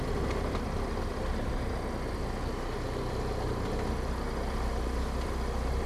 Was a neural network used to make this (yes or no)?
no